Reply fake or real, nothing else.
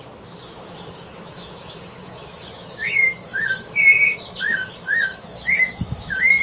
fake